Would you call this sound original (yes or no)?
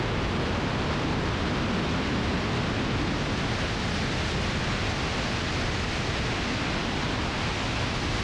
yes